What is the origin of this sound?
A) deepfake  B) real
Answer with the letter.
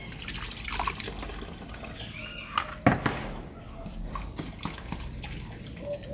B